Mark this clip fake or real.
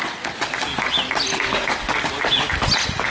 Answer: real